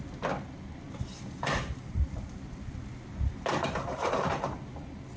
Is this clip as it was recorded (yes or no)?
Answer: yes